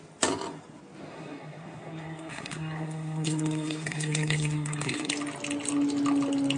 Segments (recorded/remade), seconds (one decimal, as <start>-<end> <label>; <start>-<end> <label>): 0.0-1.1 recorded; 1.1-5.1 remade; 5.1-6.6 recorded